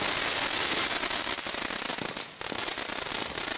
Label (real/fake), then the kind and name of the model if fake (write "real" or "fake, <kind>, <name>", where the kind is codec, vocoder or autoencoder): real